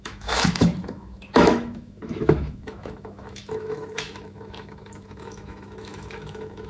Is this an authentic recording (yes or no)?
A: no